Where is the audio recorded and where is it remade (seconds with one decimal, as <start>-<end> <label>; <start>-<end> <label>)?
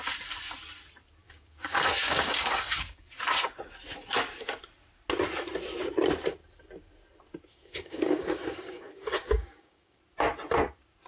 0.0-1.2 recorded; 1.2-3.1 remade; 3.1-7.5 recorded; 7.5-10.0 remade; 10.0-11.1 recorded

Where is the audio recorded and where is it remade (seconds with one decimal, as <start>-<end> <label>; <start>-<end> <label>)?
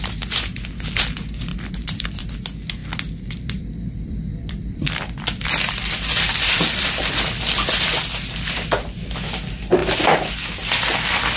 0.0-1.5 recorded; 1.5-2.3 remade; 2.3-2.8 recorded; 2.8-7.3 remade; 7.3-11.4 recorded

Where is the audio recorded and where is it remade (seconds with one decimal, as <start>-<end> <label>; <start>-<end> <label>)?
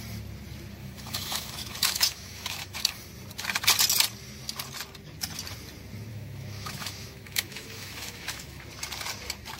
0.0-0.8 recorded; 0.8-2.9 remade; 2.9-6.1 recorded; 6.1-8.6 remade; 8.6-9.6 recorded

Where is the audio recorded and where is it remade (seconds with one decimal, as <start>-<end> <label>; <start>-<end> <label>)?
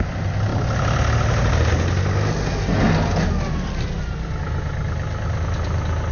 0.0-6.1 recorded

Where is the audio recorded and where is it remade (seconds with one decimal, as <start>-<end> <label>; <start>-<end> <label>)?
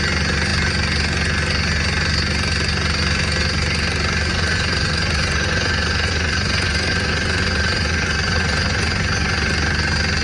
0.0-4.3 recorded; 4.3-9.5 remade; 9.5-10.2 recorded